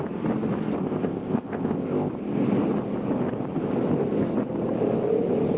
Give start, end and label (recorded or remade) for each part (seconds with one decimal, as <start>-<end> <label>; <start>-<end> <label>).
0.0-0.8 recorded; 0.8-2.1 remade; 2.1-5.6 recorded